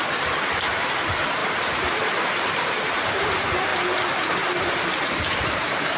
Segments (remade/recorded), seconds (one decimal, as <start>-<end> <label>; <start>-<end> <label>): 0.0-3.7 remade; 3.7-4.6 recorded; 4.6-6.0 remade